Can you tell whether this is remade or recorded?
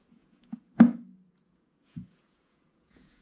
remade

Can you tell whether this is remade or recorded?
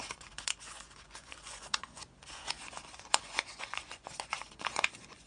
remade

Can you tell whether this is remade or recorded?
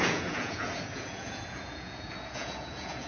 remade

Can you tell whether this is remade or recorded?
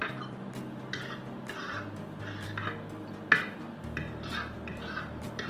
recorded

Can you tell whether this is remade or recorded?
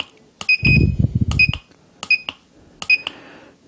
recorded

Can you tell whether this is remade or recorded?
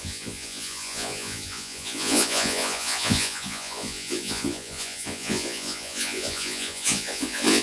remade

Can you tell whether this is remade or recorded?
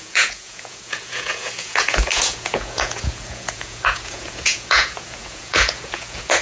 remade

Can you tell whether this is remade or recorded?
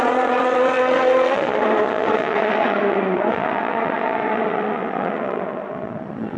remade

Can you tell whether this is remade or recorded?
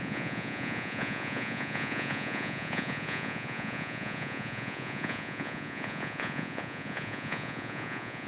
remade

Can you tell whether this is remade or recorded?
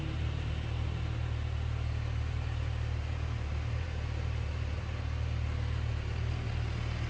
recorded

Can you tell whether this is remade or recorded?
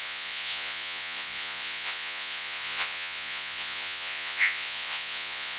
remade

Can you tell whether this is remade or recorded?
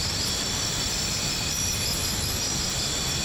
recorded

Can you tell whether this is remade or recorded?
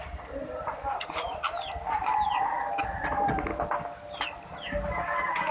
recorded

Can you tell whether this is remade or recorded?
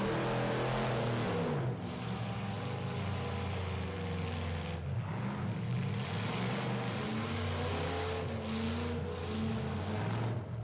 recorded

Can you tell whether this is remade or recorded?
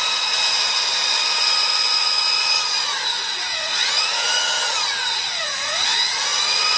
remade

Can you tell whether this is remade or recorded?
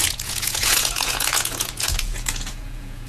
remade